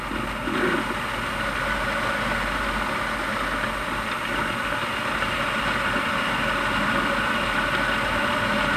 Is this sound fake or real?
real